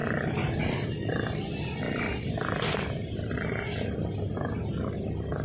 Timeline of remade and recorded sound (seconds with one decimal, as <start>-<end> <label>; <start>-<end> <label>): 0.0-5.4 recorded